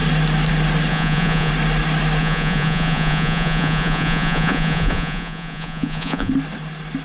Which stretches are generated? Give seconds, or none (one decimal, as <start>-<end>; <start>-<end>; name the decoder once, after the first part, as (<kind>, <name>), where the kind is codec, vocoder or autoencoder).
0.9-1.5 (vocoder, Vocos); 2.2-6.3